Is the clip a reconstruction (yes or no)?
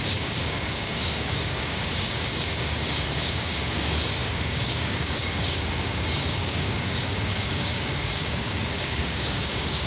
yes